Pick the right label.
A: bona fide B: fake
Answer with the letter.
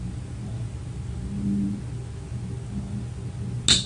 A